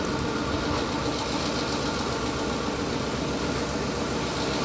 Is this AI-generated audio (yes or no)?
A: no